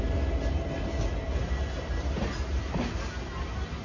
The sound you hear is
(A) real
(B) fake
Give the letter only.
A